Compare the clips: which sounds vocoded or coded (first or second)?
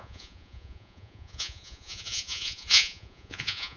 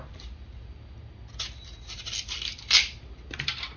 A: first